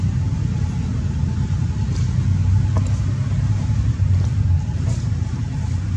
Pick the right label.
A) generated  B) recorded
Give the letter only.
B